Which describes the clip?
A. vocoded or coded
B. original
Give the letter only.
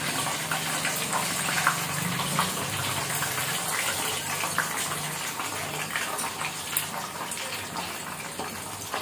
B